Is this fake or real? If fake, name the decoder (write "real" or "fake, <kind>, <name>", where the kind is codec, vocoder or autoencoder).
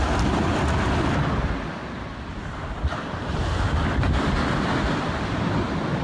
real